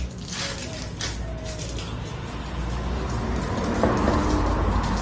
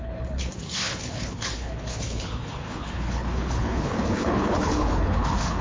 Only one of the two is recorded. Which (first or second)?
first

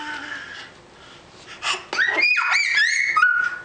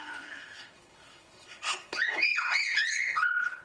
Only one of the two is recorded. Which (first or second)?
first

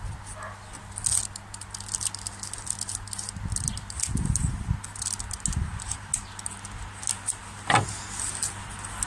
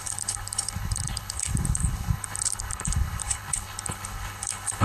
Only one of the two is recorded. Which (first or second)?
first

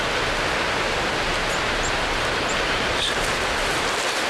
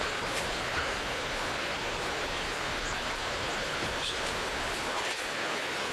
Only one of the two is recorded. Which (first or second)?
first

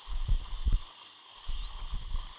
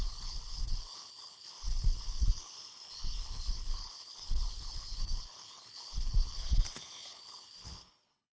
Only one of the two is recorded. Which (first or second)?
first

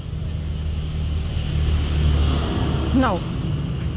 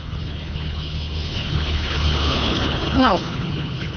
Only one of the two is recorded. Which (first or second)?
first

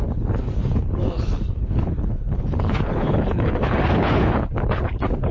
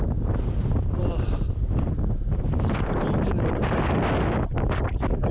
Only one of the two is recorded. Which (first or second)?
second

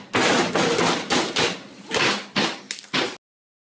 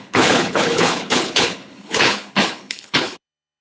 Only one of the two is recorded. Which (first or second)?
first